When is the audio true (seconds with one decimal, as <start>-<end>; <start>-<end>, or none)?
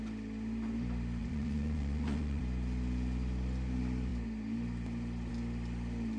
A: 0.0-1.2; 2.4-6.2